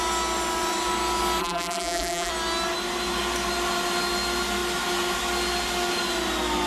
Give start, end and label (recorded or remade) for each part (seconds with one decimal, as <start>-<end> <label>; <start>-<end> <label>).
0.0-1.4 recorded; 1.4-2.3 remade; 2.3-6.7 recorded